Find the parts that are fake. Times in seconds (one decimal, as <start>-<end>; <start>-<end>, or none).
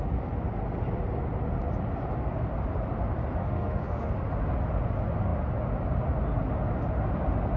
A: 3.4-4.1